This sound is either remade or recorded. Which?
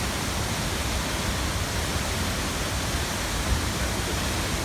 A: recorded